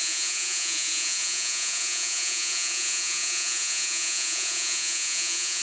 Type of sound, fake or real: fake